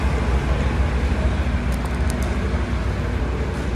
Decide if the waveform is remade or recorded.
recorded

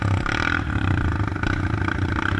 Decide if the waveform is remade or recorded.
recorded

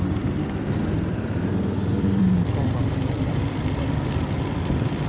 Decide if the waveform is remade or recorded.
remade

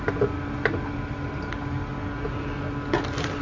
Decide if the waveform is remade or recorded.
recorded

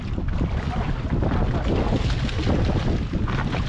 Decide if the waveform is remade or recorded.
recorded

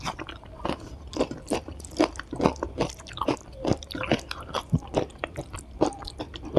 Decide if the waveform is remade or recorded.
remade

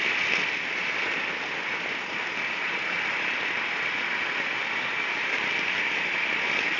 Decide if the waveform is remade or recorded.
recorded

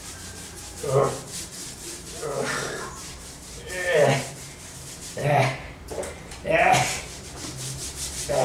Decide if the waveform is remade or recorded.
remade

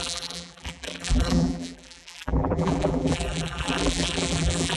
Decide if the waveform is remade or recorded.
remade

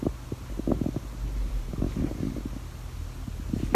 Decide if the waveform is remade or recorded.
recorded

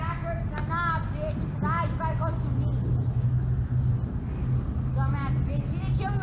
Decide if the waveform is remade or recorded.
recorded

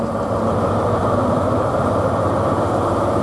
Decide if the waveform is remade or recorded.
remade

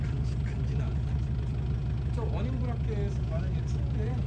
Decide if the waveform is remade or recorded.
recorded